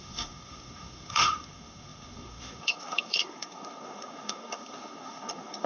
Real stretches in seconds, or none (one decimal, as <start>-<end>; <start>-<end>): none